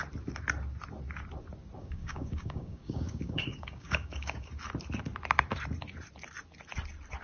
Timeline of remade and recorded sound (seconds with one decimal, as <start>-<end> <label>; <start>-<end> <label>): 0.0-1.8 recorded; 1.8-4.5 remade; 4.5-7.2 recorded